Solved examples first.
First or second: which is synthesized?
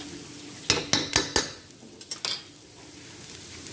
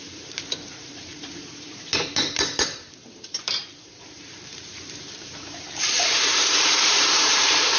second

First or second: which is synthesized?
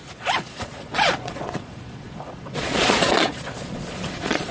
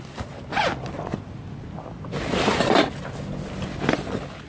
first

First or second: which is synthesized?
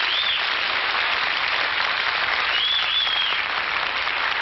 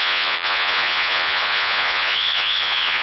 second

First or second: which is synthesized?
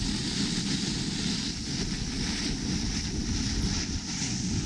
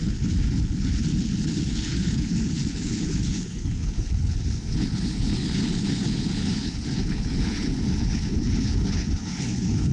second